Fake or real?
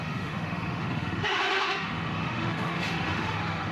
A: fake